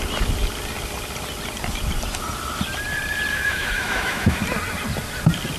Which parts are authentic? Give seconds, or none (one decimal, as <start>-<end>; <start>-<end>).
0.0-3.3; 4.4-5.6

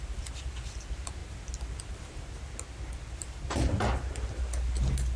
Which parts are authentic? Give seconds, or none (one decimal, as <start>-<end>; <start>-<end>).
0.0-5.2

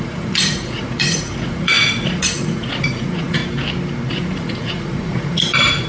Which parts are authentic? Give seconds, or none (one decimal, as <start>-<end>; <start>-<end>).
3.4-4.1

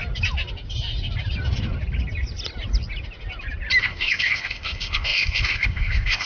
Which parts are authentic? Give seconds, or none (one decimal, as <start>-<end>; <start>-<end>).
0.0-3.8

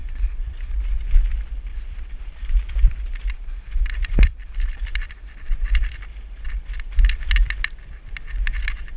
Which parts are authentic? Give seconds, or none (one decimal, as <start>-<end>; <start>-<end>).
0.7-1.7; 6.0-9.0

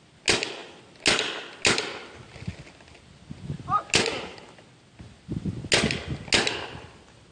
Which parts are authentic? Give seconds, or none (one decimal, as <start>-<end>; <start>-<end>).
0.0-7.3